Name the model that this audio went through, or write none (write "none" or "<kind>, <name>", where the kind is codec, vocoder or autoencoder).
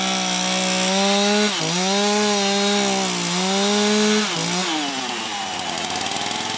none